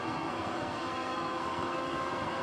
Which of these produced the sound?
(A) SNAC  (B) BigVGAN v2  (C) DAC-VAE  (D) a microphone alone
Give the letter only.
A